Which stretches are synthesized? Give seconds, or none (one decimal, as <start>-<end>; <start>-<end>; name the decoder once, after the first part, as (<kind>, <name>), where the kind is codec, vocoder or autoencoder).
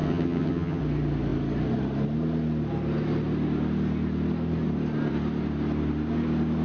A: 0.0-0.8 (vocoder, HiFi-GAN)